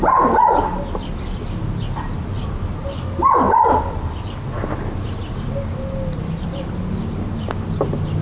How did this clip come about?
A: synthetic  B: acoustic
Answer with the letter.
B